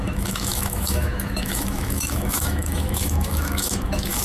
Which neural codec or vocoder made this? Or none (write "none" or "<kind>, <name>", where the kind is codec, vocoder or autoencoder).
autoencoder, DAC-VAE